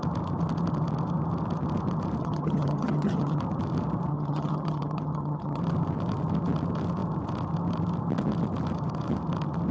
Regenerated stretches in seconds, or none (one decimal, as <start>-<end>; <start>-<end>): 2.2-3.4; 4.1-5.6